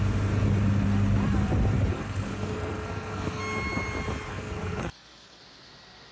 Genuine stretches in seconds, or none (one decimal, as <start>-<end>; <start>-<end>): 0.0-1.9; 3.4-4.3; 5.4-6.1